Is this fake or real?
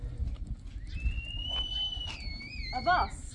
real